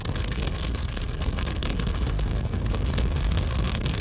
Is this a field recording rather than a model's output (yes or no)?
no